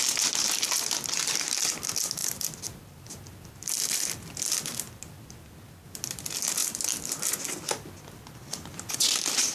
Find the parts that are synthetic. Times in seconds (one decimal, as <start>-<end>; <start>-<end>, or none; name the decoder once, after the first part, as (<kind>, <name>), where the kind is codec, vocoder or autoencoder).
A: none